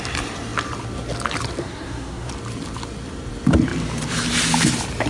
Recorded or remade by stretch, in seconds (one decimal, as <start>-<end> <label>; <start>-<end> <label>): 0.0-1.6 recorded; 1.6-2.3 remade; 2.3-5.1 recorded